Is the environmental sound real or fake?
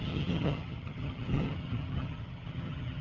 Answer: fake